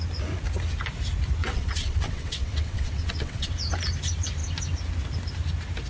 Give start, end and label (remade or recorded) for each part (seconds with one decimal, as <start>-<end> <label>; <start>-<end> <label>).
0.0-1.4 recorded; 1.4-3.5 remade; 3.5-5.9 recorded